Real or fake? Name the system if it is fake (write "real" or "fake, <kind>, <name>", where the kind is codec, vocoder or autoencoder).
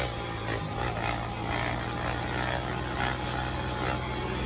real